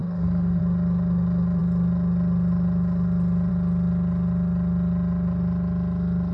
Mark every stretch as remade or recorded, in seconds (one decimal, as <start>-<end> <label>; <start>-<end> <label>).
0.0-0.6 remade; 0.6-6.3 recorded